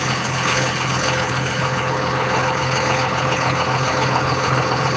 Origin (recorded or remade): remade